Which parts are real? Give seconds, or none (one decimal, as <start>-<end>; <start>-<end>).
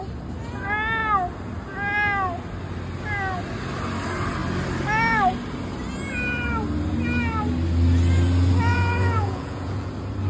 0.0-8.7; 9.9-10.3